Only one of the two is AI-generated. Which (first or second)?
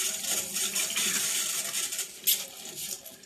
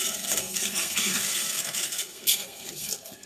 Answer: second